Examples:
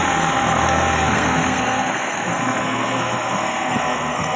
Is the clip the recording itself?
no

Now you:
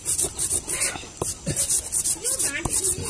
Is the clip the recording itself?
yes